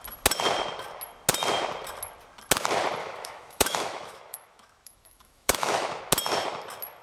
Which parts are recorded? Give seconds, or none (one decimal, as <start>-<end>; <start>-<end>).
0.0-3.0; 6.0-7.0